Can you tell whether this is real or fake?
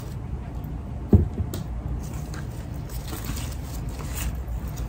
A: real